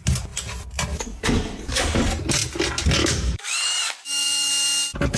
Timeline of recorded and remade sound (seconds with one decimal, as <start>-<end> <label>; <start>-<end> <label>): 0.0-0.9 recorded; 0.9-2.0 remade; 2.0-3.0 recorded; 3.0-4.5 remade; 4.5-5.2 recorded